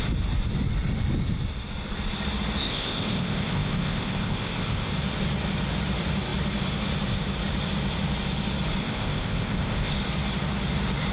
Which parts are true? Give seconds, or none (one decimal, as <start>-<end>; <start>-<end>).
0.0-2.6; 4.9-8.8; 9.9-11.1